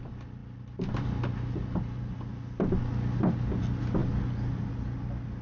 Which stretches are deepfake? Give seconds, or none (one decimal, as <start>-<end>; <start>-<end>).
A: 0.4-3.6